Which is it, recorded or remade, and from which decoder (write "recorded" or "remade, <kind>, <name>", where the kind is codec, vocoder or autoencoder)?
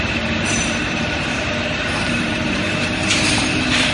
remade, vocoder, BigVGAN v2